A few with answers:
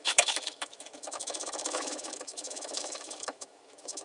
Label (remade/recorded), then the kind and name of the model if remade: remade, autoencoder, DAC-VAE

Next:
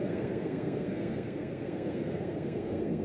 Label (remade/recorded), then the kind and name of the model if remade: remade, codec, SNAC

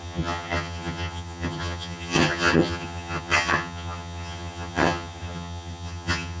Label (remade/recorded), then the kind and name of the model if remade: remade, vocoder, HiFi-GAN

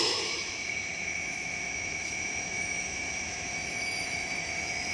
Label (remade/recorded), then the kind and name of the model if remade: remade, autoencoder, DAC-VAE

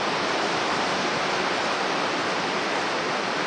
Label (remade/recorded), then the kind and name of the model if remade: recorded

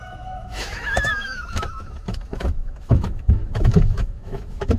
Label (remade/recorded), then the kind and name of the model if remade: remade, autoencoder, DAC-VAE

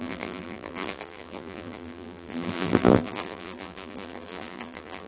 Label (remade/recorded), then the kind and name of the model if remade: remade, vocoder, BigVGAN v2